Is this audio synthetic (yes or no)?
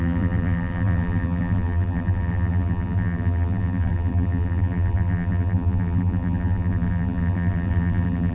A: yes